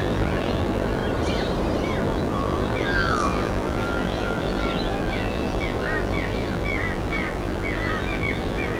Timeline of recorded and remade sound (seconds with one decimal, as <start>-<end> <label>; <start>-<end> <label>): 0.0-1.0 remade; 1.0-2.0 recorded; 2.0-8.8 remade